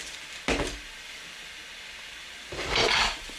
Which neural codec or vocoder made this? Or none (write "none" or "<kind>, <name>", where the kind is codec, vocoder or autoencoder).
vocoder, BigVGAN v2